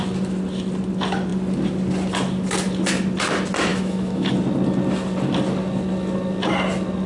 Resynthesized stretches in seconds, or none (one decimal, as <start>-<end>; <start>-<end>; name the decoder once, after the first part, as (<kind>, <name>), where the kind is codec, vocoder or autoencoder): 3.7-4.3 (autoencoder, DAC-VAE)